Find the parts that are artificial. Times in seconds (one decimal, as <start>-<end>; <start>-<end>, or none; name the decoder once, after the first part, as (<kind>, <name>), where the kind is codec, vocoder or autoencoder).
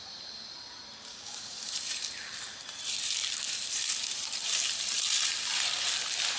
1.1-1.7 (codec, DAC)